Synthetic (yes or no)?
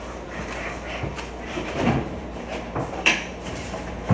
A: yes